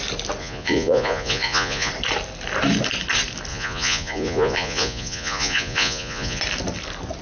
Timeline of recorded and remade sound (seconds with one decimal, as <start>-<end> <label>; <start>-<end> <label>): 0.0-0.4 recorded; 0.4-1.9 remade; 1.9-3.5 recorded; 3.5-6.4 remade; 6.4-7.2 recorded

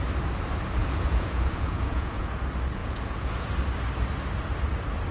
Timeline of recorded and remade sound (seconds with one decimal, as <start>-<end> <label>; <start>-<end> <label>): 0.0-0.8 recorded; 0.8-2.4 remade; 2.4-2.8 recorded; 2.8-3.5 remade; 3.5-5.1 recorded

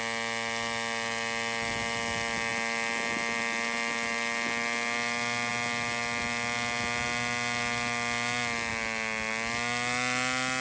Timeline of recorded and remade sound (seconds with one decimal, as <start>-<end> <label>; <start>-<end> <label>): 0.0-10.6 recorded

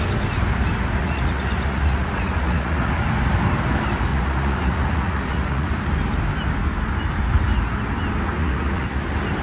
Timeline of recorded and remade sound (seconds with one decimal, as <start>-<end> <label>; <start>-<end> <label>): 0.0-1.0 recorded; 1.0-2.9 remade; 2.9-4.1 recorded; 4.1-5.7 remade; 5.7-8.4 recorded; 8.4-9.0 remade; 9.0-9.4 recorded

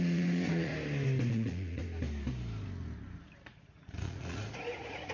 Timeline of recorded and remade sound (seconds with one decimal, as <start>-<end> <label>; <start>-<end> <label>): 0.0-0.7 remade; 0.7-1.3 recorded; 1.3-1.8 remade; 1.8-3.4 recorded; 3.4-5.1 remade

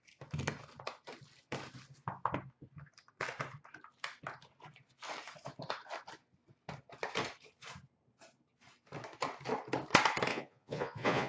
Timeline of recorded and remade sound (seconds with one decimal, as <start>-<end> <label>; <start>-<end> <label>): 0.0-10.3 recorded; 10.3-11.3 remade